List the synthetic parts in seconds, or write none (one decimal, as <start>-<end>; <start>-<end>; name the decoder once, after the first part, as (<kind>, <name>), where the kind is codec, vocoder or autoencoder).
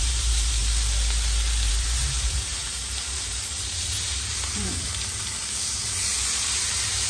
0.0-0.6 (vocoder, BigVGAN v2); 1.7-7.1